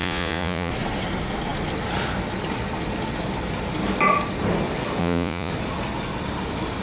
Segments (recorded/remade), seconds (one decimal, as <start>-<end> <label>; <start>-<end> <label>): 0.0-0.7 remade; 0.7-5.0 recorded; 5.0-5.5 remade; 5.5-6.8 recorded